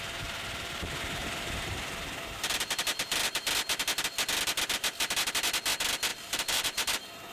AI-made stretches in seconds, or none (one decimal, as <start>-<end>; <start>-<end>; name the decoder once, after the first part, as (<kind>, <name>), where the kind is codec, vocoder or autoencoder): 1.2-1.9 (vocoder, BigVGAN v2); 6.1-7.3